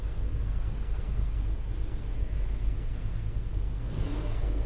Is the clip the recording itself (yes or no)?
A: no